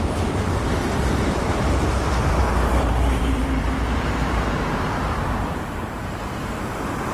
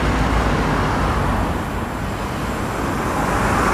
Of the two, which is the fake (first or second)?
first